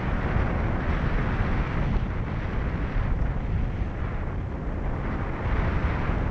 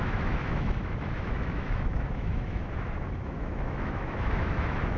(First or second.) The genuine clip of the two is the first